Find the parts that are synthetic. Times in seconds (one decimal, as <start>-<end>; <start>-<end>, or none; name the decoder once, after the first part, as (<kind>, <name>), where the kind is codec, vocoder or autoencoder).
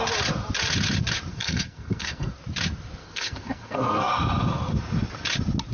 1.3-2.3 (codec, SNAC); 3.0-4.1